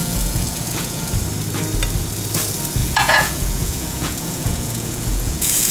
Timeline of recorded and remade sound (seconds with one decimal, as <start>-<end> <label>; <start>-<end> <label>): 0.0-1.1 remade; 1.1-2.8 recorded; 2.8-5.7 remade

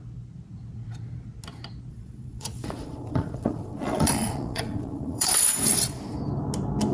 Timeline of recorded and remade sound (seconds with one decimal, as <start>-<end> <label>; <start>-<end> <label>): 0.0-1.9 recorded; 1.9-6.0 remade; 6.0-6.9 recorded

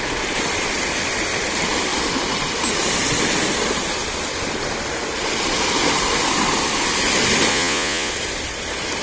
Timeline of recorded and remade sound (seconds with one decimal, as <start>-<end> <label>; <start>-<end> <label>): 0.0-7.5 recorded; 7.5-8.1 remade; 8.1-9.0 recorded

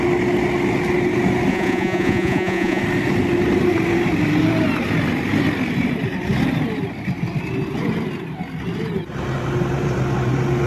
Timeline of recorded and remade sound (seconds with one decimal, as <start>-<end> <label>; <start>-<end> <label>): 0.0-1.5 recorded; 1.5-2.8 remade; 2.8-10.7 recorded

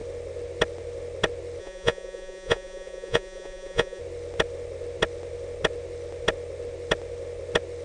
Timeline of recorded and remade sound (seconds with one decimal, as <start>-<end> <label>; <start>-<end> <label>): 0.0-1.6 recorded; 1.6-4.0 remade; 4.0-7.8 recorded